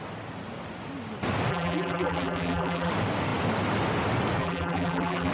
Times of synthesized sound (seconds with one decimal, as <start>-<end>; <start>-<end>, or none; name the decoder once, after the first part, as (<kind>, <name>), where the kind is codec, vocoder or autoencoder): 1.5-2.9 (vocoder, BigVGAN v2); 4.4-5.3